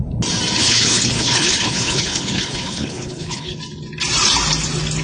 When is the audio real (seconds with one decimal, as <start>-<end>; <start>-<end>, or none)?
0.0-0.6; 3.6-5.0